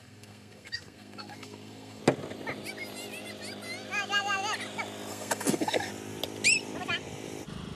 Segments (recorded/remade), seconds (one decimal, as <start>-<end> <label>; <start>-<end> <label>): 0.0-2.0 remade; 2.0-5.1 recorded; 5.1-5.9 remade; 5.9-7.8 recorded